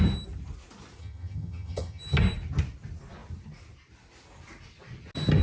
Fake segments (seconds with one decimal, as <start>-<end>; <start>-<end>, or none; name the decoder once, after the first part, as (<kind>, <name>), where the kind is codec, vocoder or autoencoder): 1.0-2.0 (vocoder, HiFi-GAN)